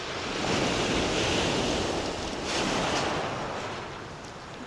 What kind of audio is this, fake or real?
real